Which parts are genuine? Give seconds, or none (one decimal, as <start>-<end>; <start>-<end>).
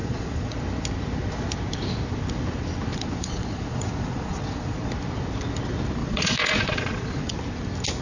0.5-2.9; 4.9-6.0; 7.3-8.0